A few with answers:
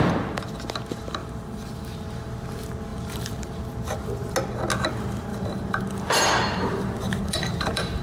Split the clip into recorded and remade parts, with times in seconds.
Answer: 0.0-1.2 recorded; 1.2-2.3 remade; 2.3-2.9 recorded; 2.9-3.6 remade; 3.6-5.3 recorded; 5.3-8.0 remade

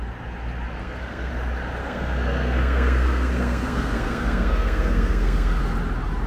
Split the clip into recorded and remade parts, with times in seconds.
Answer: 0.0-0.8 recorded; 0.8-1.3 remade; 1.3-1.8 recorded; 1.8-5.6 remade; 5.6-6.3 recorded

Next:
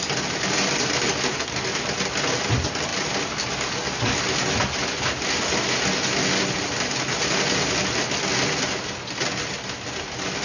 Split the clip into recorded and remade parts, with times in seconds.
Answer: 0.0-10.4 recorded